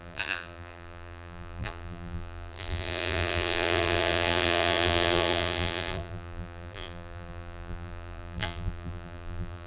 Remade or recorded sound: remade